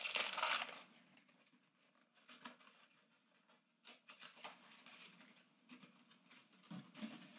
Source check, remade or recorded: recorded